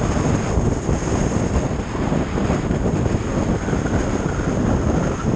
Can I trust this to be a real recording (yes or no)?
yes